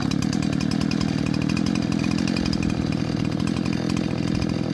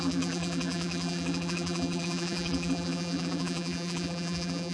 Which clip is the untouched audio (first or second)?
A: first